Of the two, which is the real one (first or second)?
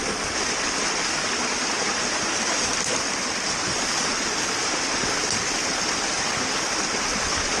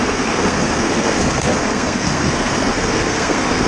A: first